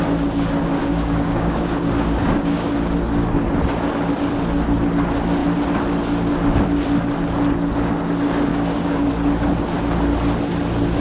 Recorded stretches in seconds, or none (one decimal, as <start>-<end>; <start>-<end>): 0.0-0.7; 2.7-8.5; 9.1-11.0